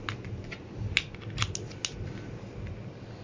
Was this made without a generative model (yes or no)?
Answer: yes